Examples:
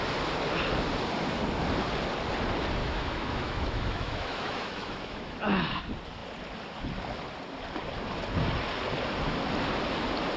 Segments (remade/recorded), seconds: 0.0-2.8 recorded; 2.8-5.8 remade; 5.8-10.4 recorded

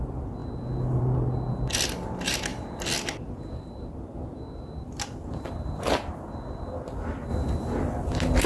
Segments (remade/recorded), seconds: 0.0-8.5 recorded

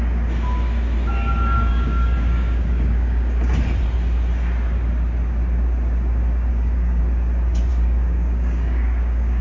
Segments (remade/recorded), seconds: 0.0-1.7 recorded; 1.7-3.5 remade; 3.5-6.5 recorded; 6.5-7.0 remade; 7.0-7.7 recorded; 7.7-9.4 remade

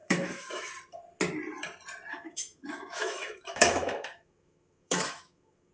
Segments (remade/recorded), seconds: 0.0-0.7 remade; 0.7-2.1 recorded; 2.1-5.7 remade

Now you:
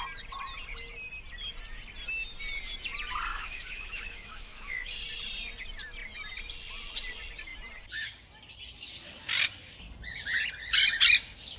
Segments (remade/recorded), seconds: 0.0-3.3 recorded; 3.3-4.9 remade; 4.9-11.6 recorded

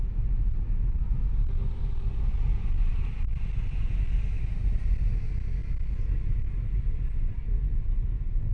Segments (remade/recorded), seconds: 0.0-8.5 recorded

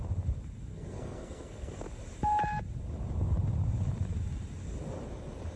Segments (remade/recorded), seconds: 0.0-0.7 recorded; 0.7-1.8 remade; 1.8-5.6 recorded